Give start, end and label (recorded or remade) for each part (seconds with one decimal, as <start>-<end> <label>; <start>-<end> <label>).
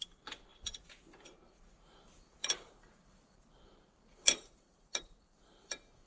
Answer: 0.0-2.4 recorded; 2.4-6.1 remade